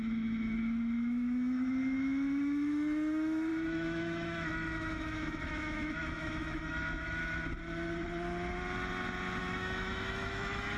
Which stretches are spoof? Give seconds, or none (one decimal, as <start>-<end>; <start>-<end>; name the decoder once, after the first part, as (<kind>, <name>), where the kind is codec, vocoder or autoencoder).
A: 0.0-7.2 (autoencoder, DAC-VAE); 9.4-10.8